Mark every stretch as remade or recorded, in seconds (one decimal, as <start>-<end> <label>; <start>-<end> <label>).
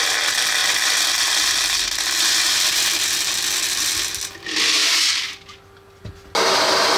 0.0-7.0 recorded